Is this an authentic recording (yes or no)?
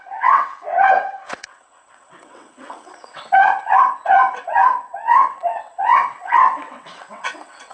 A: no